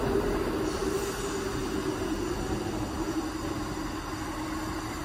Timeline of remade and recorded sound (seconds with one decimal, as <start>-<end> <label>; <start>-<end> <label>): 0.0-5.0 recorded